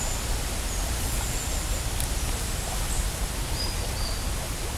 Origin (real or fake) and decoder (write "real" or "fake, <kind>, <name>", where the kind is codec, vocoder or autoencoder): real